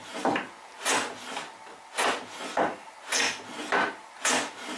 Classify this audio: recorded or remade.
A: recorded